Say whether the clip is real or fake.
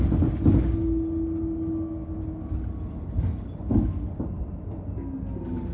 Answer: real